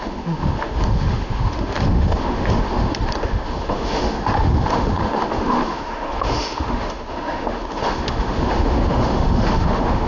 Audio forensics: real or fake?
fake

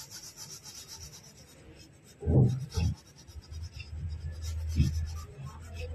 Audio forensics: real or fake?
real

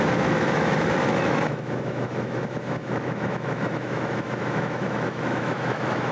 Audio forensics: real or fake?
fake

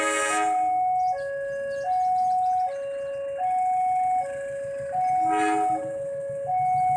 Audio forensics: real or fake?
real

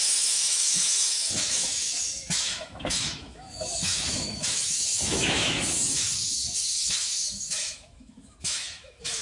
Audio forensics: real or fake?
fake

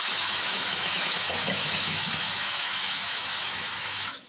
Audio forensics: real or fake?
fake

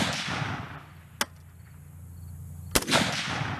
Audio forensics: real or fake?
real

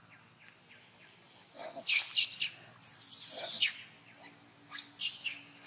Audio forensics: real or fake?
real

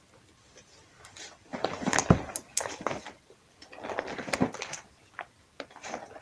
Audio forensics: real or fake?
real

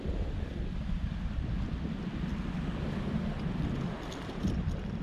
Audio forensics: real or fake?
real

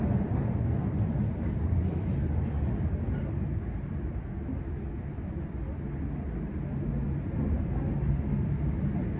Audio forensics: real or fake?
real